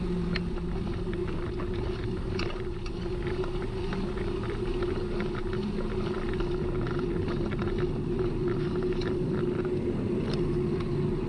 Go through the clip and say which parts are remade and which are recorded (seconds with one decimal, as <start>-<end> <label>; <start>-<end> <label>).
0.0-11.3 recorded